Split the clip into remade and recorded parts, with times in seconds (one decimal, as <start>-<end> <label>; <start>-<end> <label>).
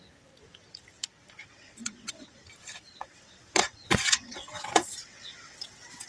0.0-1.4 recorded; 1.4-2.5 remade; 2.5-2.9 recorded; 2.9-6.1 remade